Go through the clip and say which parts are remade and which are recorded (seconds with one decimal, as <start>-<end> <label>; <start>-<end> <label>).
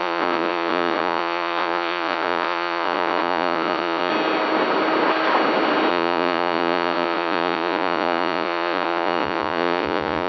0.0-4.1 remade; 4.1-5.9 recorded; 5.9-10.3 remade